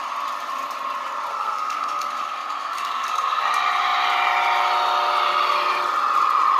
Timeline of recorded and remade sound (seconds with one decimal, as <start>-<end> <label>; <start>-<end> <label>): 0.0-1.3 recorded; 1.3-3.4 remade; 3.4-6.6 recorded